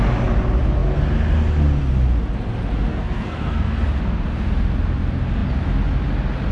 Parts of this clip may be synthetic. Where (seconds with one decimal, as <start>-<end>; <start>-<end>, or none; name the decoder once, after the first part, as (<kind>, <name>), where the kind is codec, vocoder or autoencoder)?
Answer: 2.9-3.7 (codec, SNAC)